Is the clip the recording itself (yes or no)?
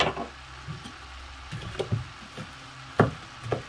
yes